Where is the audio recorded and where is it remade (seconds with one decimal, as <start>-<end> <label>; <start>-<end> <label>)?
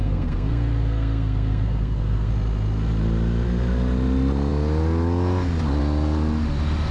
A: 0.0-2.3 remade; 2.3-6.9 recorded